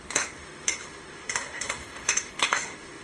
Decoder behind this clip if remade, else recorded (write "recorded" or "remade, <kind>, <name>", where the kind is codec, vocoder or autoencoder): remade, autoencoder, DAC-VAE